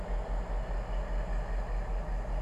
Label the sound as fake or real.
real